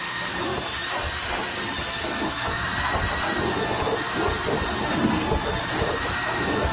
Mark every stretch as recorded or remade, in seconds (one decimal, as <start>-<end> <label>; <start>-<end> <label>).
0.0-0.5 remade; 0.5-2.0 recorded; 2.0-2.7 remade; 2.7-5.7 recorded; 5.7-6.7 remade